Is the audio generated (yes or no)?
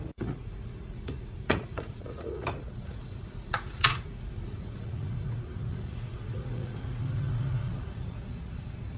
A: yes